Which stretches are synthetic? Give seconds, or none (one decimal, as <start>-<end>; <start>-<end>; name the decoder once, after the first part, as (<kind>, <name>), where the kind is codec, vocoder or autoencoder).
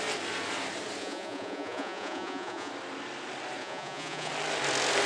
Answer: 1.0-2.7 (vocoder, Vocos); 3.6-4.3